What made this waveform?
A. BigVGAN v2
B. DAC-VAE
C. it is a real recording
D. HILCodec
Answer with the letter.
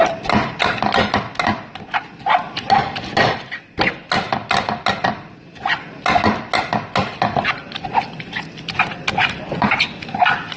C